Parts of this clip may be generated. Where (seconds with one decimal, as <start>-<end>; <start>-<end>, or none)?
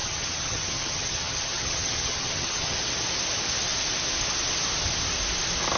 0.0-2.8